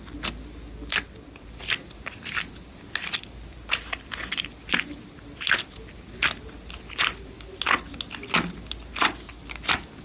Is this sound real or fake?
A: real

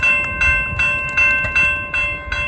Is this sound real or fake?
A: real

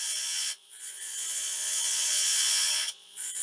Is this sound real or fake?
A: fake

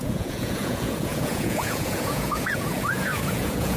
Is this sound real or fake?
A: fake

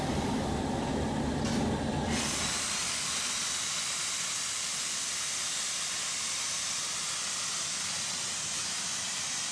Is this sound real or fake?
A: real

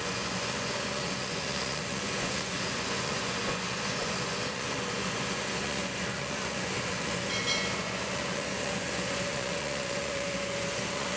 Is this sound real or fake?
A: fake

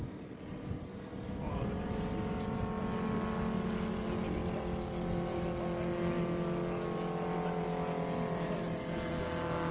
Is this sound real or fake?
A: real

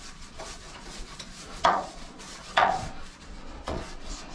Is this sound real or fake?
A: fake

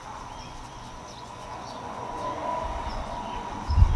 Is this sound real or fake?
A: fake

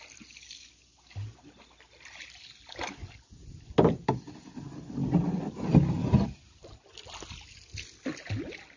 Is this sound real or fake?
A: real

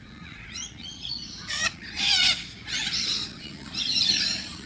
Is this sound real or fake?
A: fake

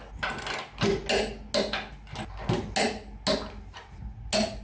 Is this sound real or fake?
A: real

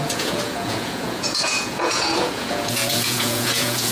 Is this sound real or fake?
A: fake